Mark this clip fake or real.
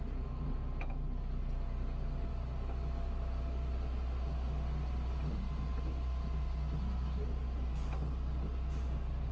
real